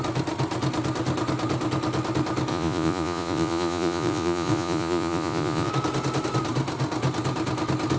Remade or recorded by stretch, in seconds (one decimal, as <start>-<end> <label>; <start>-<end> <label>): 0.0-2.5 recorded; 2.5-5.7 remade; 5.7-8.0 recorded